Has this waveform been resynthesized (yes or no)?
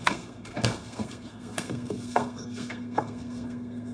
yes